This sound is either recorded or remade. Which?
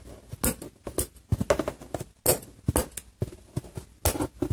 recorded